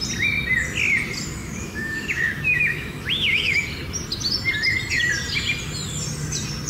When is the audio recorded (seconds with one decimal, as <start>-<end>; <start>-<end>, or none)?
0.0-1.4; 3.6-6.7